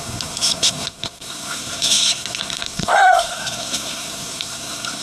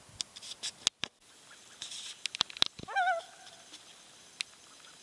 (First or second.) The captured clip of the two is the second